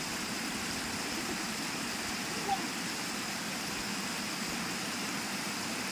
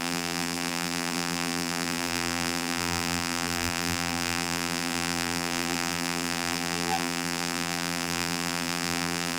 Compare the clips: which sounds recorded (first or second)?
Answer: first